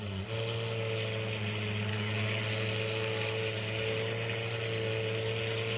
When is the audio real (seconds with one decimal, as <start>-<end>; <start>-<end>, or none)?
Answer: 0.0-1.9; 2.4-5.8